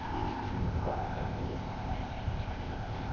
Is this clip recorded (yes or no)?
no